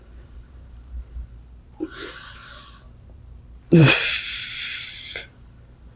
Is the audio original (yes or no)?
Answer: no